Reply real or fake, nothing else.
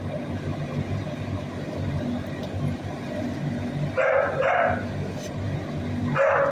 real